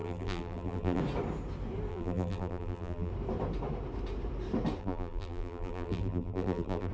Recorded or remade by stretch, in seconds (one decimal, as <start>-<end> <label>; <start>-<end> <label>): 0.0-1.0 remade; 1.0-1.9 recorded; 1.9-3.1 remade; 3.1-4.8 recorded; 4.8-6.9 remade